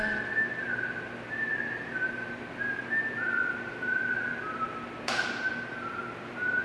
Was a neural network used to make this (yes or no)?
yes